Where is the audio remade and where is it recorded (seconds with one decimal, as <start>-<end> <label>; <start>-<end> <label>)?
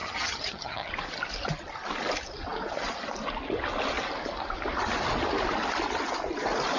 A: 0.0-0.9 remade; 0.9-6.8 recorded